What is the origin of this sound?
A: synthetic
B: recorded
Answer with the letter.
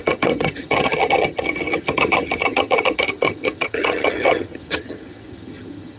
A